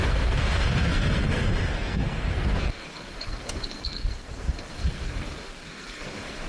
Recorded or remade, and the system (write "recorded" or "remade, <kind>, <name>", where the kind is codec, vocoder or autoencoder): remade, codec, SNAC